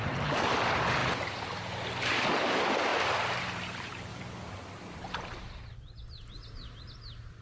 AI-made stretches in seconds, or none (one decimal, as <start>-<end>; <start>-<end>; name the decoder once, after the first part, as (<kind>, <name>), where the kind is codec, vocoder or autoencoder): 1.0-2.3 (vocoder, BigVGAN v2); 4.1-6.8